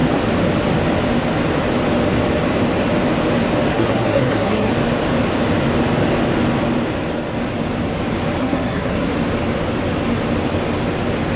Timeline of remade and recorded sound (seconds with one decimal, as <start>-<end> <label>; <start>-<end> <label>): 0.0-3.7 recorded; 3.7-4.7 remade; 4.7-8.4 recorded; 8.4-9.1 remade; 9.1-11.4 recorded